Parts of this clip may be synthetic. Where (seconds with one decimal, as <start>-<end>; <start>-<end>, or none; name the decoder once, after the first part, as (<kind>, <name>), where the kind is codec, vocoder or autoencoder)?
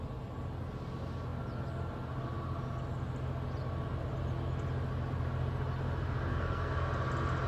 6.3-6.9 (codec, SNAC)